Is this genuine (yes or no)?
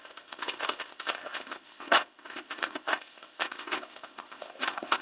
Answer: no